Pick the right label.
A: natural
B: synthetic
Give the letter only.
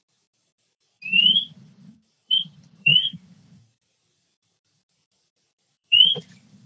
B